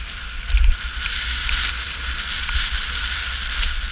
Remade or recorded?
recorded